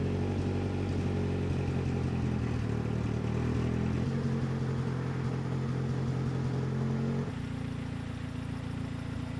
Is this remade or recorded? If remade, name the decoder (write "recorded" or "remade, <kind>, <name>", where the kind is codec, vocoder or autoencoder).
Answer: recorded